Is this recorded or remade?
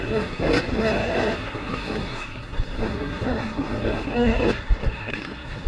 remade